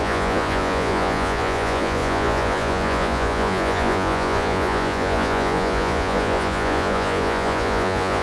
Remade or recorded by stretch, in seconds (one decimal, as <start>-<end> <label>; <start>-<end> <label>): 0.0-8.2 remade